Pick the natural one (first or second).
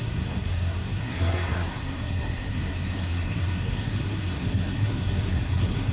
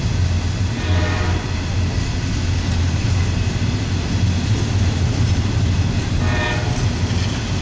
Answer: second